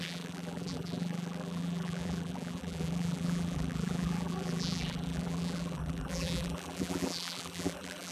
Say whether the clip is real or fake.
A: fake